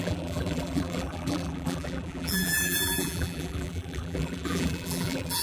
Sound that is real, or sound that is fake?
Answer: fake